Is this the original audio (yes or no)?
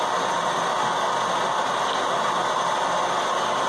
yes